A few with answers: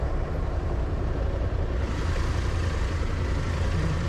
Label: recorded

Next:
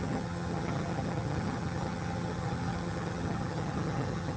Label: remade